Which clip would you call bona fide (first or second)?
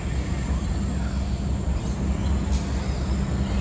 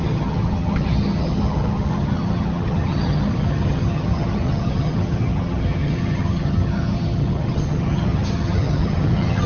first